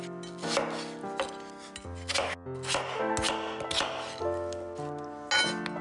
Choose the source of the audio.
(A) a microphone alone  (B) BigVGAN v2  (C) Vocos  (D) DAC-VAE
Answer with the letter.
A